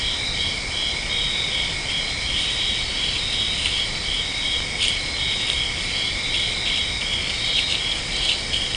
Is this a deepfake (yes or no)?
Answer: no